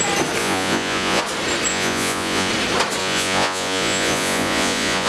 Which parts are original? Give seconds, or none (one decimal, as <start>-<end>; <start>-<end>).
0.0-0.4; 1.2-1.7; 2.5-3.0